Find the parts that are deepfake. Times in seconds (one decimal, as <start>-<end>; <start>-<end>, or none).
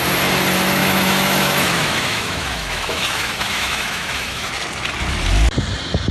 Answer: 0.8-4.5